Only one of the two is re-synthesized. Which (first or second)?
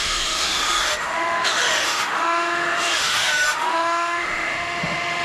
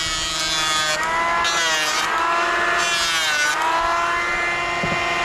first